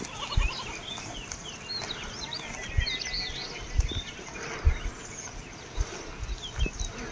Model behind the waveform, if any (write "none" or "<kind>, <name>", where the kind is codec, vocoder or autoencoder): none